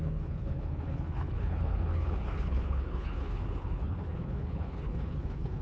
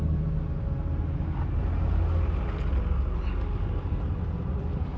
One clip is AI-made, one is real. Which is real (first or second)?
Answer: second